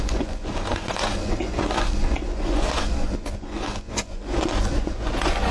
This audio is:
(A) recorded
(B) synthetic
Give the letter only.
B